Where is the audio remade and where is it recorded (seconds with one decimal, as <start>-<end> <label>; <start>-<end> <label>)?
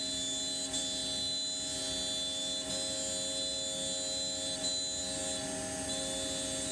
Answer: 0.0-6.7 recorded